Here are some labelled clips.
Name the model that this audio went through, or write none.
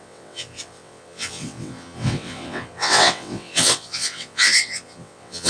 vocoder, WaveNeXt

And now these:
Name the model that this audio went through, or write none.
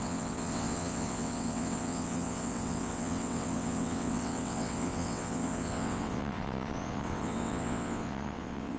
vocoder, WaveNeXt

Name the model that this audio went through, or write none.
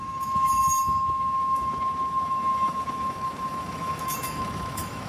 autoencoder, DAC-VAE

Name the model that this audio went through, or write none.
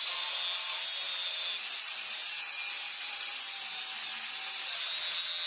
none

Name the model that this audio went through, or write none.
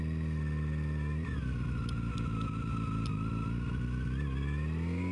none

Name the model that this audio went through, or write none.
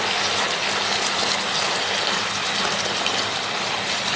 none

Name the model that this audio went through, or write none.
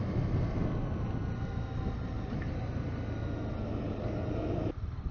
none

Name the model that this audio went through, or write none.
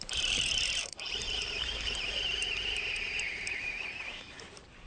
vocoder, BigVGAN v2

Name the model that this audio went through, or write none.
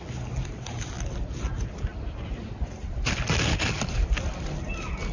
none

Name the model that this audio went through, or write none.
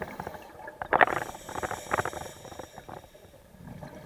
vocoder, BigVGAN v2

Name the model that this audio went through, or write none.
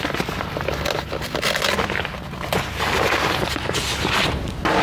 none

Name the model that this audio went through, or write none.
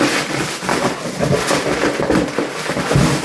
none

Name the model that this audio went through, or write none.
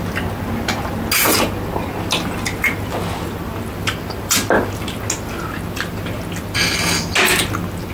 none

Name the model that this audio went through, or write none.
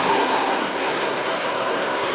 codec, SNAC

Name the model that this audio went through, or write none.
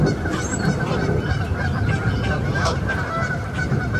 vocoder, BigVGAN v2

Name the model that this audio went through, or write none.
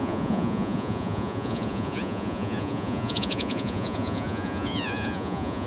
vocoder, Vocos